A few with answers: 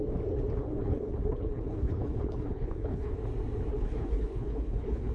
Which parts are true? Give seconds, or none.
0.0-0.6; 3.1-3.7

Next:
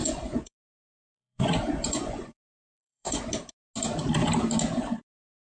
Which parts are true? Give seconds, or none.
3.2-5.4

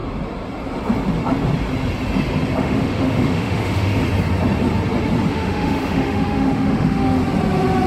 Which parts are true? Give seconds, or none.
0.0-2.6; 4.0-5.3; 7.2-7.9

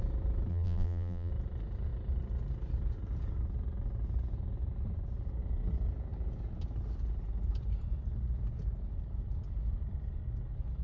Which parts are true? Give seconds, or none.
0.0-0.5; 1.3-10.8

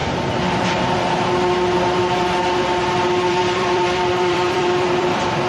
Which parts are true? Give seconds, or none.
0.0-3.3